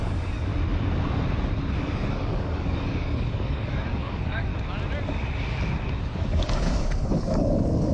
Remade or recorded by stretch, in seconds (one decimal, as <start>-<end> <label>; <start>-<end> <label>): 0.0-0.5 remade; 0.5-1.8 recorded; 1.8-4.5 remade; 4.5-6.0 recorded; 6.0-7.9 remade